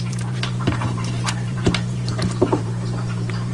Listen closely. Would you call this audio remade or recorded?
remade